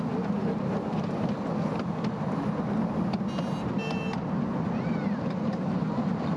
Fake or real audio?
real